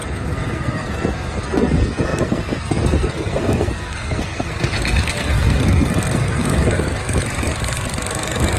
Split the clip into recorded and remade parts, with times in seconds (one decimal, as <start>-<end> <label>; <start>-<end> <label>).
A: 0.0-8.6 remade